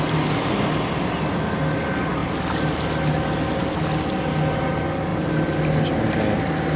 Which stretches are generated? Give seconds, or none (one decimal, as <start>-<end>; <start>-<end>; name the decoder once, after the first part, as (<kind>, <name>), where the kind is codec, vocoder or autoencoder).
none